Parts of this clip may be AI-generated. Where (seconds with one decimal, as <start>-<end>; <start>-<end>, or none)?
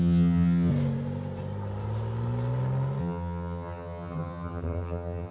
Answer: 0.0-0.7; 3.0-5.3